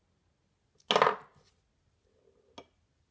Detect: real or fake real